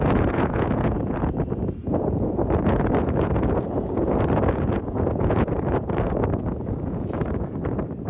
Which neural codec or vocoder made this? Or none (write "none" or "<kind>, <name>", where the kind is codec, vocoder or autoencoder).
vocoder, Vocos